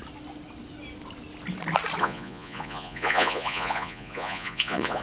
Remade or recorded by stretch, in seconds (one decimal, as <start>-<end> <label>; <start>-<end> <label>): 0.0-2.0 recorded; 2.0-5.0 remade